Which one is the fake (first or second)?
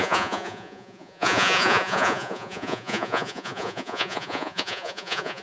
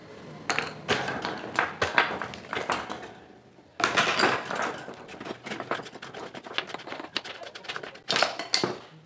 first